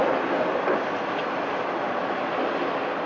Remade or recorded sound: recorded